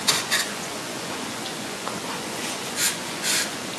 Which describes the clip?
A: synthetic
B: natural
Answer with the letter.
A